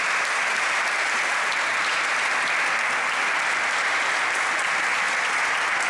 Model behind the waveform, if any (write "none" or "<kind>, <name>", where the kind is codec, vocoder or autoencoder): none